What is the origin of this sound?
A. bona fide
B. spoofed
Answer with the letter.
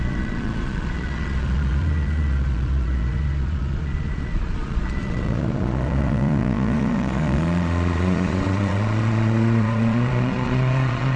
B